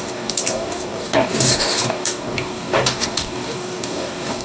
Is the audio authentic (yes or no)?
no